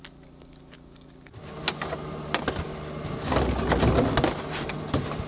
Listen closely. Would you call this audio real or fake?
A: real